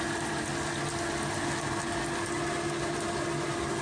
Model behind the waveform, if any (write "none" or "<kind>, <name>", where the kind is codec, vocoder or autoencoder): none